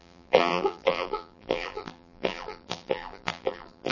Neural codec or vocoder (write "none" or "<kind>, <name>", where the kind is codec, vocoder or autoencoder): vocoder, BigVGAN v2